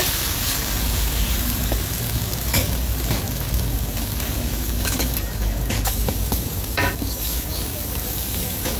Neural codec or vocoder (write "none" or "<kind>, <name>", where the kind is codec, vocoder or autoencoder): codec, DAC